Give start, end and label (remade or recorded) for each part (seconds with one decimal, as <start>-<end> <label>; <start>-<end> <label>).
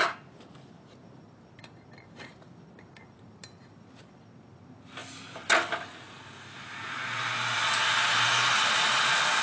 0.0-9.4 recorded